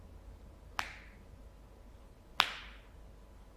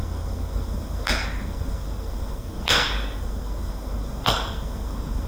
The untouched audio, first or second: first